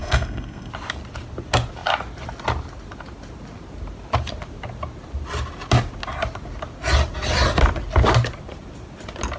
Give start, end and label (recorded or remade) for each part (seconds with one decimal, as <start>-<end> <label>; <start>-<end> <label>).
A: 0.0-0.7 remade; 0.7-9.4 recorded

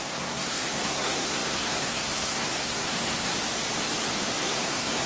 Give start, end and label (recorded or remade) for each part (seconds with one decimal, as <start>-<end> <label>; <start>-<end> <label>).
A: 0.0-3.3 remade; 3.3-4.4 recorded; 4.4-5.1 remade

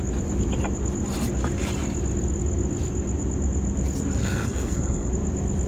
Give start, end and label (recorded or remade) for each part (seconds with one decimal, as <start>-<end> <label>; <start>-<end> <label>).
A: 0.0-4.2 recorded; 4.2-5.1 remade; 5.1-5.7 recorded

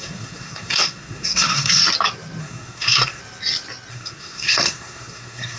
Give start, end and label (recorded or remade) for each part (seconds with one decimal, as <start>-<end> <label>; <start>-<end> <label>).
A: 0.0-1.8 remade; 1.8-2.4 recorded; 2.4-3.2 remade; 3.2-3.9 recorded; 3.9-5.6 remade

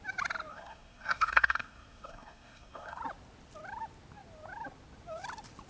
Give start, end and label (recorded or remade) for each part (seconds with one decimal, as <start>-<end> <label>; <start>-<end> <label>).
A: 0.0-0.5 recorded; 0.5-3.0 remade; 3.0-5.7 recorded